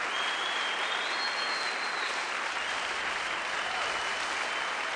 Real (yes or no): yes